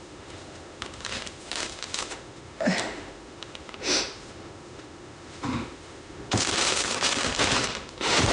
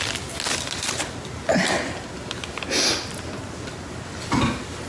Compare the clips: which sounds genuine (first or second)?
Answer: second